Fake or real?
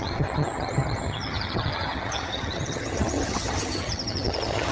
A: fake